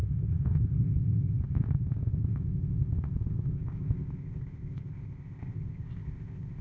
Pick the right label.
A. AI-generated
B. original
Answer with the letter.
A